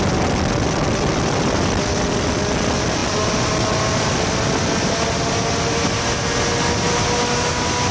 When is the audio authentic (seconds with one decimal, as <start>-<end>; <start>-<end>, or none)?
0.0-7.9